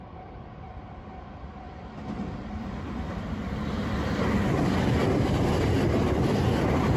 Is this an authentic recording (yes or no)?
no